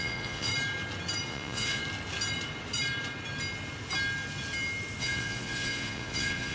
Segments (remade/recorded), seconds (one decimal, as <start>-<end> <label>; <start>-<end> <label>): 0.0-0.5 remade; 0.5-1.3 recorded; 1.3-1.8 remade; 1.8-5.0 recorded; 5.0-6.5 remade